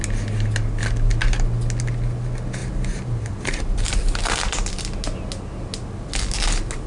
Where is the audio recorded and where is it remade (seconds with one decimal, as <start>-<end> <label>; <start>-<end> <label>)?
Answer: 0.0-2.6 recorded; 2.6-4.8 remade; 4.8-6.9 recorded